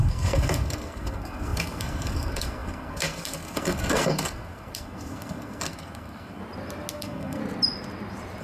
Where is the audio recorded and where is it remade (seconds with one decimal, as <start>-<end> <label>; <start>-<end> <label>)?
0.0-6.4 remade; 6.4-6.9 recorded; 6.9-7.4 remade; 7.4-8.4 recorded